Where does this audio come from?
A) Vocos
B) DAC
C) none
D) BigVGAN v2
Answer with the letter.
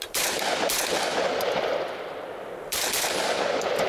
D